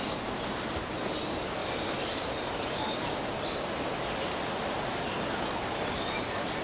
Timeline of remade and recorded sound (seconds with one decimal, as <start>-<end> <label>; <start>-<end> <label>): 0.0-1.6 recorded; 1.6-5.2 remade; 5.2-6.6 recorded